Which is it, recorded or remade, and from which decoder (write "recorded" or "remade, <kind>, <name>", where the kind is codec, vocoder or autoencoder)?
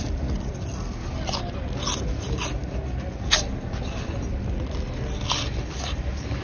recorded